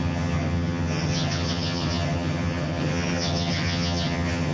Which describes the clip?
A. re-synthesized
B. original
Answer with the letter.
A